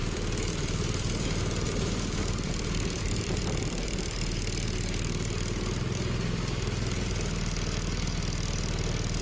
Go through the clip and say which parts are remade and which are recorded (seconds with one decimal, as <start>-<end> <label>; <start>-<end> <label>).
0.0-4.0 remade; 4.0-9.2 recorded